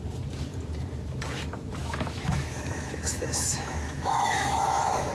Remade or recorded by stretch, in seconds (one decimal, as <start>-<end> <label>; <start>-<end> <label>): 0.0-1.8 recorded; 1.8-5.1 remade